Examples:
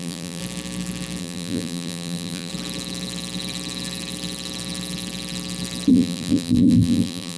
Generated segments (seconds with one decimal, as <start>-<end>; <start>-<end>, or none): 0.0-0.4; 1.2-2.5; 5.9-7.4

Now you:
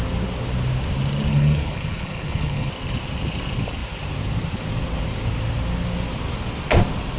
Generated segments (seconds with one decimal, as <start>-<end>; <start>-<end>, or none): 1.3-2.7

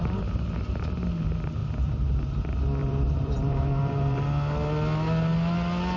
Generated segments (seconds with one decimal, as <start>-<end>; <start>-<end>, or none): 2.8-4.2

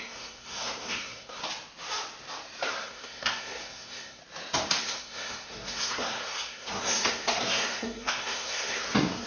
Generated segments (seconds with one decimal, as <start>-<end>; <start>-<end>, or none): 0.0-1.4; 2.7-4.2; 4.8-9.3

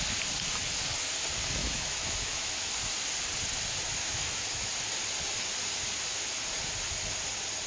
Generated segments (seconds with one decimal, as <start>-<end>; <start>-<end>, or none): 1.6-2.7; 4.0-4.7

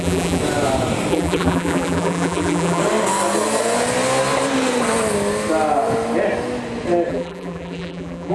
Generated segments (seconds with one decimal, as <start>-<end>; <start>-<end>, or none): 0.0-0.4; 1.1-2.8; 7.1-8.3

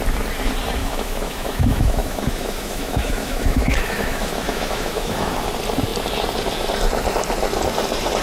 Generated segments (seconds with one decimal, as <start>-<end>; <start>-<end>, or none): 0.8-5.5

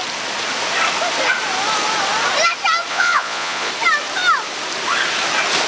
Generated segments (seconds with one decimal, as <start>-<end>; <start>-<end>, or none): 2.9-3.7